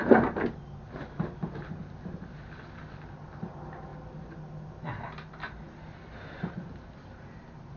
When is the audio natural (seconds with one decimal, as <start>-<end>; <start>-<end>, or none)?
0.0-7.8